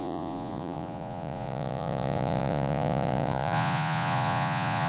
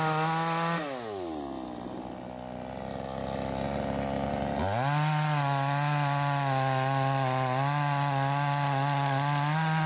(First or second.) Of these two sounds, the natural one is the second